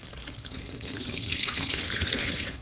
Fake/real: fake